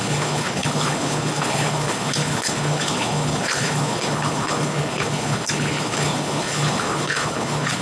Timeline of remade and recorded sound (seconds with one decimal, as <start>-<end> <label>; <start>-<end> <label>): 0.0-7.8 remade